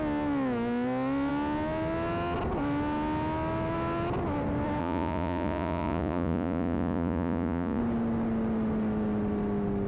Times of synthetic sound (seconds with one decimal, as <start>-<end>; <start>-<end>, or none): 4.8-7.8